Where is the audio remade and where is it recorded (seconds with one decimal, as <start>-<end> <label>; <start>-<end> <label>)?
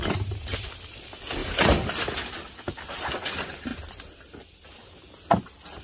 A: 0.0-3.7 recorded; 3.7-4.7 remade; 4.7-5.8 recorded